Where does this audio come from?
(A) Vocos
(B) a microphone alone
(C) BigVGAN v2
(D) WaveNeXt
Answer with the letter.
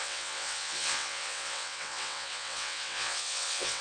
D